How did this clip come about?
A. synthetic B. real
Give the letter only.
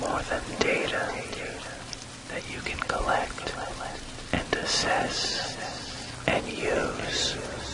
B